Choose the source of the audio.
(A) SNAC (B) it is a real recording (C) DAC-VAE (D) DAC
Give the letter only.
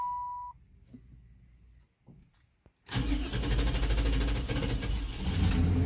B